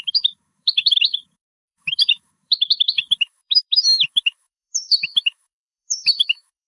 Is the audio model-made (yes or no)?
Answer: yes